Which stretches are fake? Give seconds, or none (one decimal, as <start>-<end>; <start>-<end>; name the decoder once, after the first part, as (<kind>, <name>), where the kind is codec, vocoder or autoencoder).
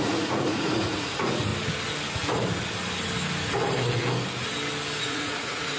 0.0-1.5 (vocoder, Vocos); 5.0-5.8